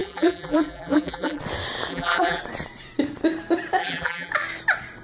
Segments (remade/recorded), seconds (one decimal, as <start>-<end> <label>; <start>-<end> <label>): 0.0-1.4 remade; 1.4-1.9 recorded; 1.9-2.4 remade; 2.4-3.8 recorded; 3.8-4.3 remade; 4.3-5.0 recorded